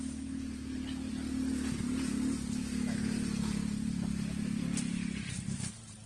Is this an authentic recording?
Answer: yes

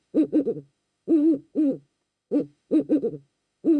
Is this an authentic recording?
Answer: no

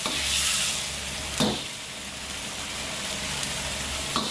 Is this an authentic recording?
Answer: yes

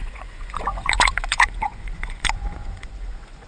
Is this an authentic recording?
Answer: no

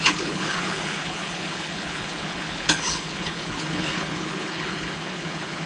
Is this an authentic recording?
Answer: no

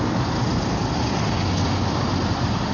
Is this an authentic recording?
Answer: yes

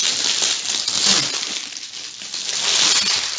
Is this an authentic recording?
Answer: yes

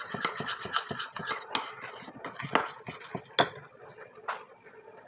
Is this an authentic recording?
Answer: yes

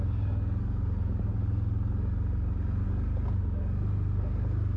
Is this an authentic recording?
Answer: yes